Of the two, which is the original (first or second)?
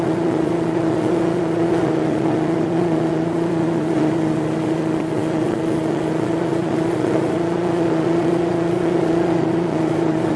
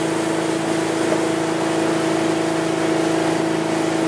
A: second